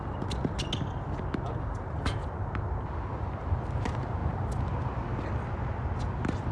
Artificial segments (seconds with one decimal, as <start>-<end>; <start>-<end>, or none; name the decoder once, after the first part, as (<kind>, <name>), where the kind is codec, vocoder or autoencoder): none